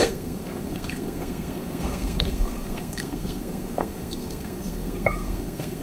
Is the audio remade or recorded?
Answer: remade